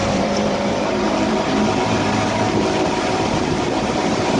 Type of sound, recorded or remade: remade